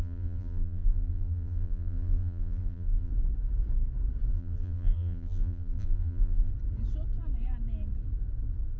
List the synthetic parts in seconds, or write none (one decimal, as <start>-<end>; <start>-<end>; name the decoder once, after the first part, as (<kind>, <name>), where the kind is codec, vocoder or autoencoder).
0.0-3.1 (vocoder, BigVGAN v2); 4.3-6.5